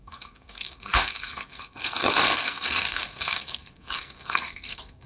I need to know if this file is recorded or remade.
remade